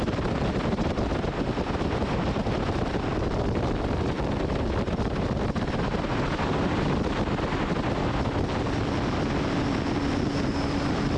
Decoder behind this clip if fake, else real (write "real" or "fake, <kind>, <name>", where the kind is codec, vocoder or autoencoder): real